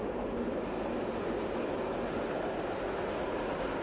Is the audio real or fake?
real